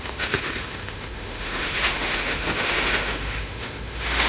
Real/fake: fake